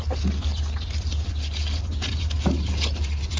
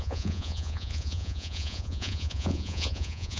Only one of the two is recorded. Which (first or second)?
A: first